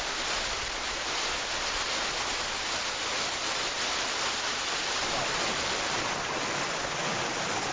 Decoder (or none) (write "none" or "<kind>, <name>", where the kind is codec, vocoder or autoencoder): none